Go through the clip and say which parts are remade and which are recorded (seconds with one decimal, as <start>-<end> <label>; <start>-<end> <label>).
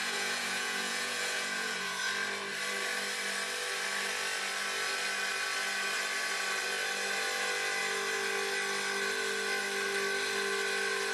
0.0-2.0 remade; 2.0-11.1 recorded